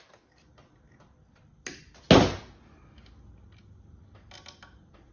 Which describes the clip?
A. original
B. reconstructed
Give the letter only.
A